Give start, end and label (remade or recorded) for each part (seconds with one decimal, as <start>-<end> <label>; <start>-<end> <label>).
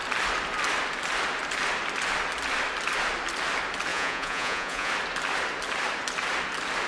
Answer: 0.0-3.9 recorded; 3.9-4.9 remade; 4.9-6.9 recorded